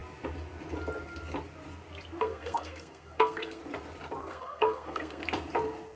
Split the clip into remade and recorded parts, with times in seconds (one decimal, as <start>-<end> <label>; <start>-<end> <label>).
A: 0.0-2.2 recorded; 2.2-3.6 remade; 3.6-4.2 recorded; 4.2-5.2 remade; 5.2-6.0 recorded